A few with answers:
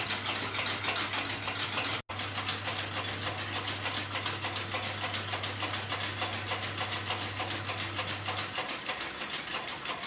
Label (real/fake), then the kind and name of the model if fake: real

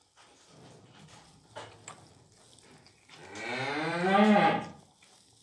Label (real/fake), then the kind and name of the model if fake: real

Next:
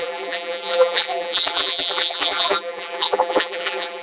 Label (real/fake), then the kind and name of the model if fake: fake, vocoder, BigVGAN v2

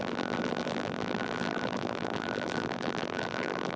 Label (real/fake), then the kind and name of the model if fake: fake, vocoder, BigVGAN v2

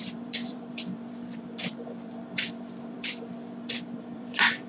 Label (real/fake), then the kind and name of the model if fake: fake, vocoder, BigVGAN v2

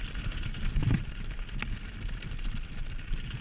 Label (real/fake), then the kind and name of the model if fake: fake, vocoder, BigVGAN v2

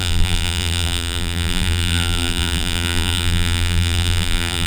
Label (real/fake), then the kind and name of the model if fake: fake, vocoder, BigVGAN v2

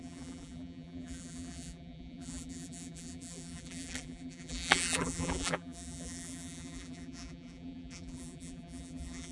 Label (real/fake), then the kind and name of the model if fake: fake, vocoder, BigVGAN v2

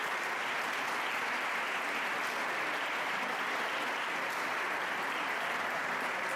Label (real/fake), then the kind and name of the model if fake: real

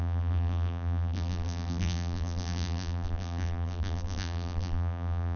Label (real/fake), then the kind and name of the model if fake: fake, vocoder, BigVGAN v2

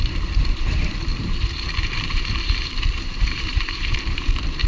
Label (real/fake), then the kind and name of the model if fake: fake, vocoder, BigVGAN v2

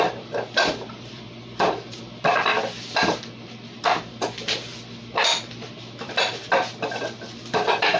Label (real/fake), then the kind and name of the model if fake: fake, vocoder, BigVGAN v2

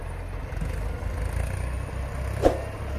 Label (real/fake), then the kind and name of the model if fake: real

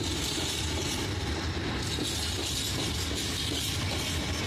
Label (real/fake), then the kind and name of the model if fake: real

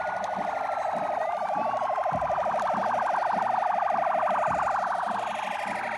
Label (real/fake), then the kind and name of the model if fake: real